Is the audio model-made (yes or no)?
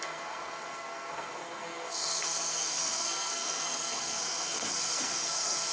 yes